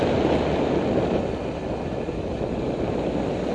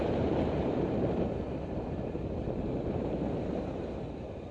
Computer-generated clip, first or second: second